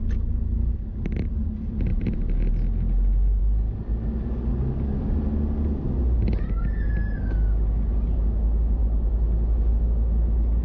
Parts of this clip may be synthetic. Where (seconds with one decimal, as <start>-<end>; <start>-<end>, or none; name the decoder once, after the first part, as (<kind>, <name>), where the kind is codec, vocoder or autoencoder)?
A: 1.9-2.5 (vocoder, BigVGAN v2)